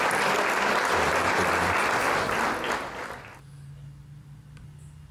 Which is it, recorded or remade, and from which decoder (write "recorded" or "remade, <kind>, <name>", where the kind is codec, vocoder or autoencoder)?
recorded